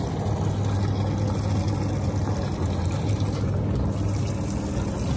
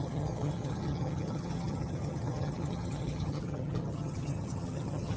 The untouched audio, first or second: first